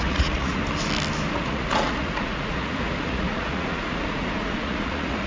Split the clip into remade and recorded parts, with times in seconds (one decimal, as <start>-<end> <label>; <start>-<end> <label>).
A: 0.0-0.6 remade; 0.6-1.3 recorded; 1.3-5.3 remade